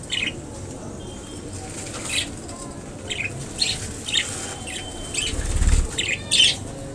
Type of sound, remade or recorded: recorded